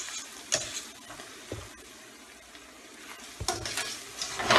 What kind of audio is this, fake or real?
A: real